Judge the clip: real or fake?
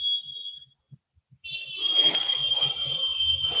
real